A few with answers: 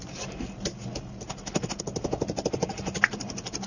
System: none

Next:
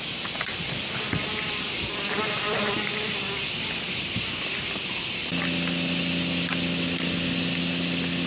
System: none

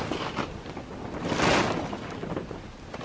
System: none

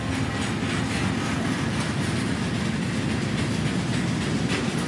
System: none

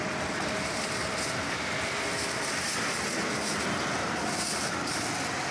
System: none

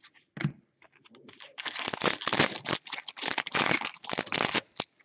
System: none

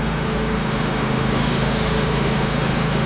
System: autoencoder, DAC-VAE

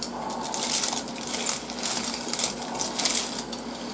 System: none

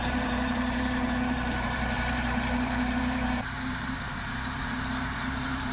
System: vocoder, BigVGAN v2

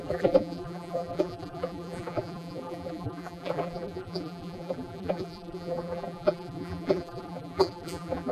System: vocoder, BigVGAN v2